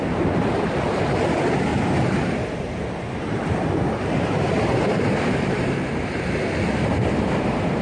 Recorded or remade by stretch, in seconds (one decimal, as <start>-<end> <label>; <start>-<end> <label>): 0.0-1.7 recorded; 1.7-6.4 remade; 6.4-7.8 recorded

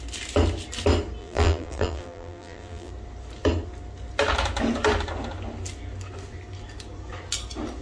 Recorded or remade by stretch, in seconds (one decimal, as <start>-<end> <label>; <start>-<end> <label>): 0.0-1.2 recorded; 1.2-2.9 remade; 2.9-7.8 recorded

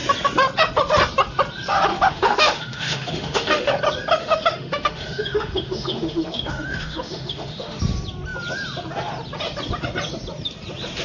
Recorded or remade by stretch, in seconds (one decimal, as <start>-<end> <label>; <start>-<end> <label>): 0.0-1.9 recorded; 1.9-3.7 remade; 3.7-4.2 recorded; 4.2-7.8 remade; 7.8-11.0 recorded

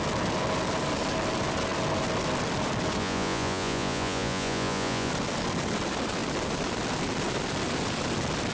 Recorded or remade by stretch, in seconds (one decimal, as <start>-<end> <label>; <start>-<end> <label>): 0.0-3.0 recorded; 3.0-5.1 remade; 5.1-8.5 recorded

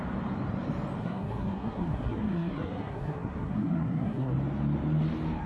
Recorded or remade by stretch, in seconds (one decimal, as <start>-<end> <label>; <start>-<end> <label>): 0.0-1.0 recorded; 1.0-4.3 remade; 4.3-5.5 recorded

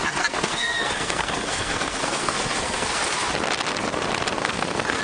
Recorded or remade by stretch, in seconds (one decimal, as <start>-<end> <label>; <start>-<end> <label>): 0.0-3.0 remade; 3.0-4.4 recorded; 4.4-5.0 remade